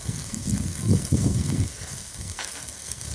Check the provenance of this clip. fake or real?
fake